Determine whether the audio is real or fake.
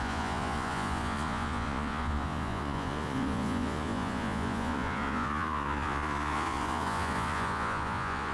fake